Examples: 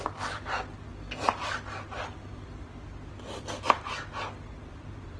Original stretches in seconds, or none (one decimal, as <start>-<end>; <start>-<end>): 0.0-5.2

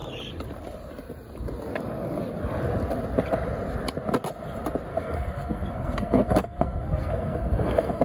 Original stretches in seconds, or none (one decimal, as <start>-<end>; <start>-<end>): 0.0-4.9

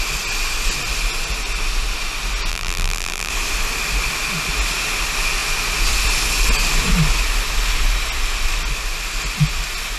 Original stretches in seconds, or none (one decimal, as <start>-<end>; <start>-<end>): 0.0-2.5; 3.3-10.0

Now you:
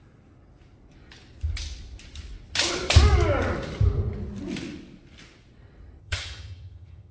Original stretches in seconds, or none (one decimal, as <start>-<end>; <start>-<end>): 0.0-6.0